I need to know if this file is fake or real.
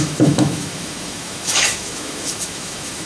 fake